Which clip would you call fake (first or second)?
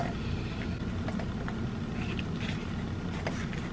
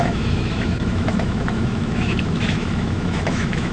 second